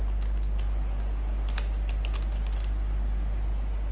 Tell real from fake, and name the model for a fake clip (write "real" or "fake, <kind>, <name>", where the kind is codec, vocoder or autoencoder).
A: real